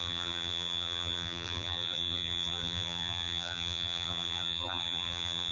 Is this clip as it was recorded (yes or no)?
no